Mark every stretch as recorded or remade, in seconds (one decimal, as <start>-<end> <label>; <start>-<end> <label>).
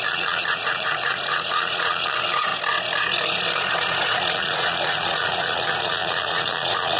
0.0-2.5 remade; 2.5-3.7 recorded; 3.7-7.0 remade